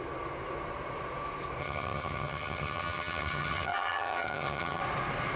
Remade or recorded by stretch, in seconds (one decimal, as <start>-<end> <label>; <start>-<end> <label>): 0.0-1.6 recorded; 1.6-4.8 remade; 4.8-5.4 recorded